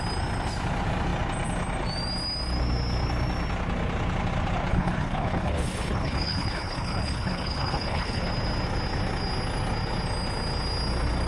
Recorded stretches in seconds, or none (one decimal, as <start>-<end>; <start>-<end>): 0.0-4.7; 8.2-11.3